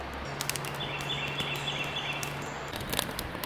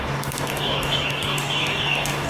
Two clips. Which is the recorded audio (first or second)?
first